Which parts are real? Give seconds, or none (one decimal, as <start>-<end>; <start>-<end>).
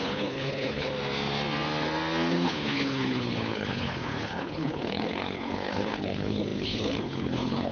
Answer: 0.9-2.3